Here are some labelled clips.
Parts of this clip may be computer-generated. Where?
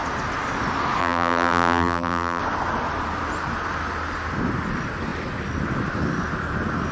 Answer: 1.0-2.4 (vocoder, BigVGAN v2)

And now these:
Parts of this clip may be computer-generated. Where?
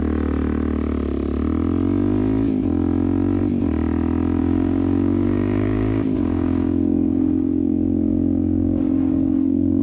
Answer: 4.4-9.8 (codec, DAC)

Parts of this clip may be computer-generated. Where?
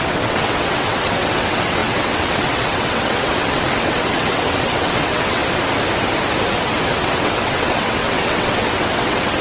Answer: 0.0-5.4 (vocoder, WaveNeXt); 6.6-9.4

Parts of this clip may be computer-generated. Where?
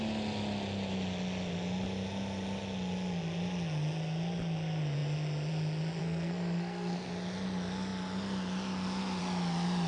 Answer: 6.0-7.1 (codec, SNAC)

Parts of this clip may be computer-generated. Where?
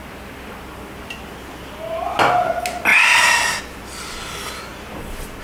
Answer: 0.0-0.5 (vocoder, BigVGAN v2); 2.9-3.6; 4.7-5.4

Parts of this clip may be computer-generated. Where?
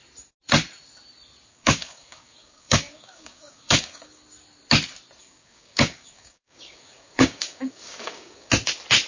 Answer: 1.5-4.2 (codec, DAC); 5.2-8.5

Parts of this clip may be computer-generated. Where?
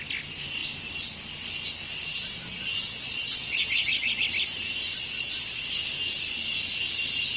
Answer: 2.1-4.2 (vocoder, Vocos); 4.9-5.7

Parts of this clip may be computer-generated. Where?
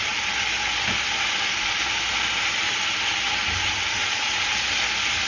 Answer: 4.0-4.5 (vocoder, Vocos)